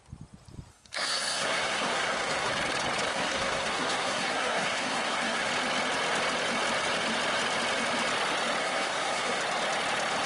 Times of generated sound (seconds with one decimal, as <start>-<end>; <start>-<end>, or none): 0.7-2.5; 3.1-5.5; 8.6-9.4